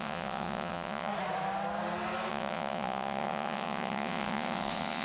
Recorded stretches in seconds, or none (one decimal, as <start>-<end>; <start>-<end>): 1.1-2.3